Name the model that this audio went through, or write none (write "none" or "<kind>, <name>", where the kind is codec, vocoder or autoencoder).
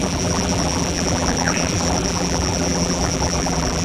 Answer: vocoder, BigVGAN v2